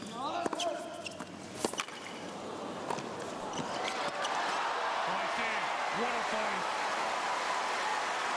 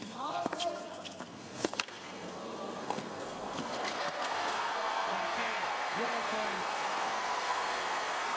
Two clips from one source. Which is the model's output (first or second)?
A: second